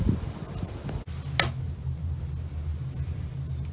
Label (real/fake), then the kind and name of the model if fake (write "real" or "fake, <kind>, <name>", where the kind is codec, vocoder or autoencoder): real